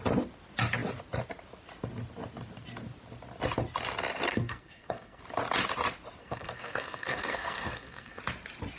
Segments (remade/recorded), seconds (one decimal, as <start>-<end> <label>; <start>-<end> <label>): 0.0-4.3 recorded; 4.3-5.2 remade; 5.2-6.2 recorded; 6.2-8.2 remade; 8.2-8.8 recorded